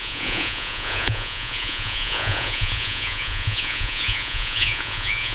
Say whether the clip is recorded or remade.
remade